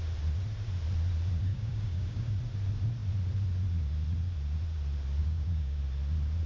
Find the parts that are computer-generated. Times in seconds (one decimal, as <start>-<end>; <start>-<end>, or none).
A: 1.5-2.4; 5.2-5.8